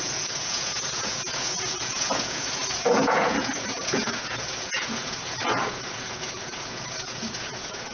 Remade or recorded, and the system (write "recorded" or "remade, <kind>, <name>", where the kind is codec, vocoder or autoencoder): remade, vocoder, Vocos